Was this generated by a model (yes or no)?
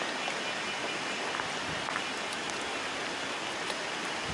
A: no